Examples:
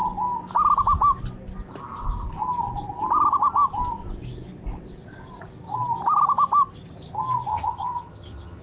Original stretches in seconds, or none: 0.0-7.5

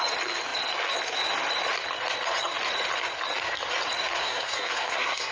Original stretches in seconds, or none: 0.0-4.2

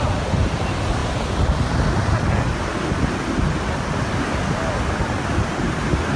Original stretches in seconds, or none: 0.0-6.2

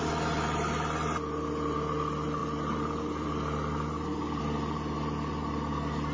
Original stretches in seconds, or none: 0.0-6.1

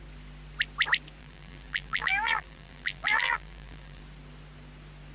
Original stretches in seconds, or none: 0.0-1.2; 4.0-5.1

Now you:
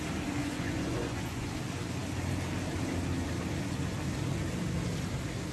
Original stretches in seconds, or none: 0.0-0.4; 1.5-5.5

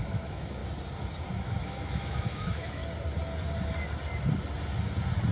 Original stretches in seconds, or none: 0.6-1.4; 2.8-5.3

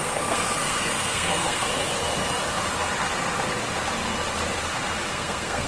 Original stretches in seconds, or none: 1.7-5.1